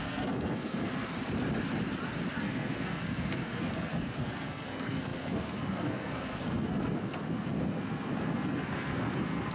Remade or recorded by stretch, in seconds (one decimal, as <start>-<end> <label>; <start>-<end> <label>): 0.0-1.1 remade; 1.1-2.4 recorded; 2.4-9.5 remade